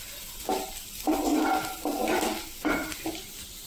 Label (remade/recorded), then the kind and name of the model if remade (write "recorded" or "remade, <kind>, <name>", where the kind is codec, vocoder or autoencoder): recorded